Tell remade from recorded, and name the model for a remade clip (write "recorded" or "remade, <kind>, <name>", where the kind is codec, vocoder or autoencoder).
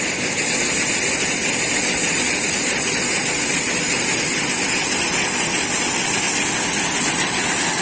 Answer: recorded